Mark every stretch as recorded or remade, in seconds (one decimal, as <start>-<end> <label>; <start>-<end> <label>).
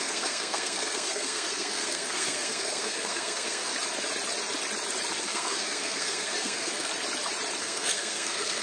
0.0-3.7 remade; 3.7-5.1 recorded; 5.1-6.9 remade; 6.9-7.6 recorded; 7.6-8.6 remade